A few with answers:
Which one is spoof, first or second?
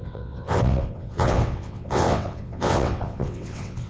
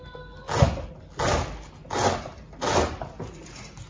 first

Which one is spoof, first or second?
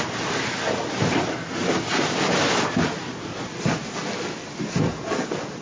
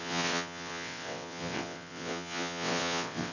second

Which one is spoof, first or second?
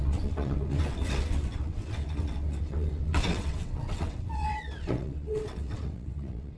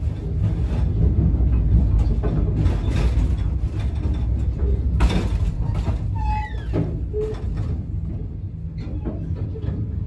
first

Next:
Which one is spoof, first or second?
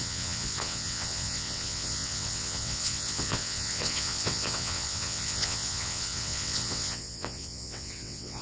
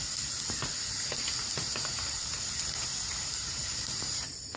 first